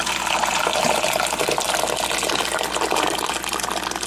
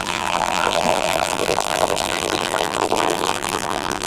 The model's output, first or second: second